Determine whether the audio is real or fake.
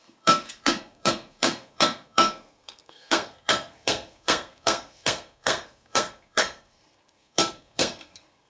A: fake